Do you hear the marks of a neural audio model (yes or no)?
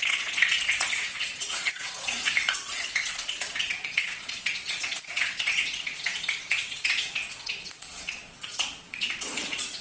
yes